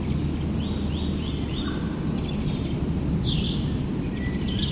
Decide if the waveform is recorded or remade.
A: recorded